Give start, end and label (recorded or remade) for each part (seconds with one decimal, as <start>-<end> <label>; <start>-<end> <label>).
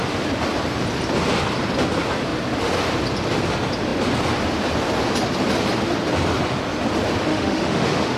0.0-7.3 recorded; 7.3-8.2 remade